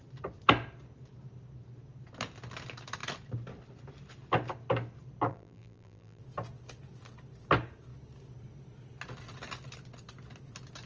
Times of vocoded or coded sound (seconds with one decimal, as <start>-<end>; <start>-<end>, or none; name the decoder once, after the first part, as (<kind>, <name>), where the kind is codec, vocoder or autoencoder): 5.3-6.2 (vocoder, BigVGAN v2)